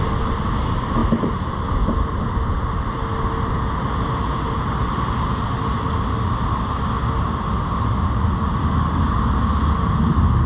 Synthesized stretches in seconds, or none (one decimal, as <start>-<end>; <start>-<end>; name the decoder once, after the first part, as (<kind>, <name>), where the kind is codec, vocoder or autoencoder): none

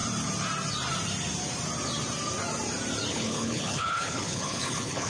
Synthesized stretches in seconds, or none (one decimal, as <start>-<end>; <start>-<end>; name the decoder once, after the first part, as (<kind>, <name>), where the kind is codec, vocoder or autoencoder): 3.1-5.1 (codec, HILCodec)

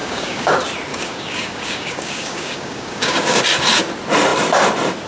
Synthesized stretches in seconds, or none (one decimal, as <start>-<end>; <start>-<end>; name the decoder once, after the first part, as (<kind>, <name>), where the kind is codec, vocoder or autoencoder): 0.0-0.5 (codec, DAC); 0.9-3.4

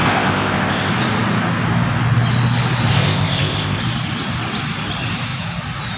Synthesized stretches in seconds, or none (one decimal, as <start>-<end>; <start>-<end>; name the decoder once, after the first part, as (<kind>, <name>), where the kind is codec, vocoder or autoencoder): 0.0-0.9 (codec, ZipCodec); 2.9-3.8

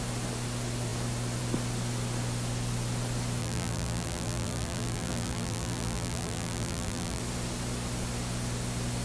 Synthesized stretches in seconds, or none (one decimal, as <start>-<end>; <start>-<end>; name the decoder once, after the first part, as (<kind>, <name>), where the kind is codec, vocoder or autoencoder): 3.4-7.2 (vocoder, BigVGAN v2)

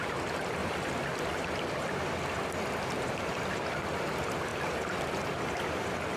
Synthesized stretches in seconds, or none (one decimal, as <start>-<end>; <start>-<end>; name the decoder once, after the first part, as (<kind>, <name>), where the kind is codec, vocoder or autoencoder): 0.6-2.0 (vocoder, BigVGAN v2)

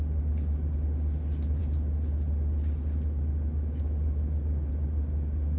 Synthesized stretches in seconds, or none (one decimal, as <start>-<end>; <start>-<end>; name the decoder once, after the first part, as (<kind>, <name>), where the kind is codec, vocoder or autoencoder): none